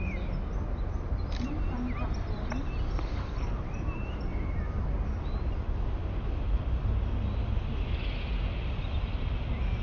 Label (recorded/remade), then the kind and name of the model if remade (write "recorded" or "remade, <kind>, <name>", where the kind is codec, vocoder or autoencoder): recorded